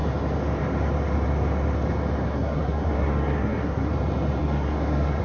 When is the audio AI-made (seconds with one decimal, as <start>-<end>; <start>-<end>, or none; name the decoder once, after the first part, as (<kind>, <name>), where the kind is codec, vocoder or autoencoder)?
2.2-3.9 (codec, SNAC); 4.4-5.2

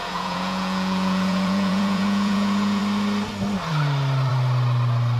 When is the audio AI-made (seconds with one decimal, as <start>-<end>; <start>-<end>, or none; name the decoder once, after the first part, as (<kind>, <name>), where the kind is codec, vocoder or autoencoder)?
0.0-2.8 (vocoder, Vocos)